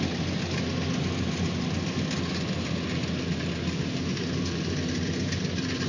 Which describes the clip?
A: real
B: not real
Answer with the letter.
A